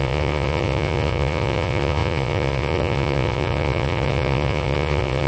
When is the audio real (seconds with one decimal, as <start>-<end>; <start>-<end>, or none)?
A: none